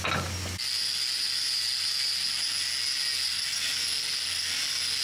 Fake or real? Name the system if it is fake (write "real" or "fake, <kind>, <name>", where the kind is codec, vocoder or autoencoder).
real